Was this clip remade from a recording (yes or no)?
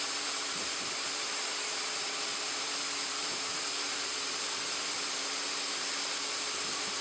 yes